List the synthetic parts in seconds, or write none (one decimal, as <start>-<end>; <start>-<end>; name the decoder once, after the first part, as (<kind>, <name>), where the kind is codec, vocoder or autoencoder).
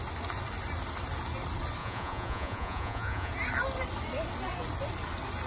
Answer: 1.8-3.3 (vocoder, Vocos)